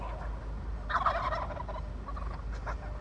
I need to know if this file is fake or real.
real